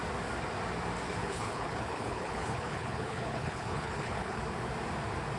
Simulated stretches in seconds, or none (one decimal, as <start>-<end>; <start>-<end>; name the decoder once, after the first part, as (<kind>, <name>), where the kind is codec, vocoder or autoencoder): 1.2-4.4 (codec, HILCodec)